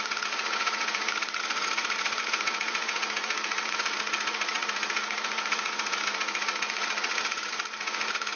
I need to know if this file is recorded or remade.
remade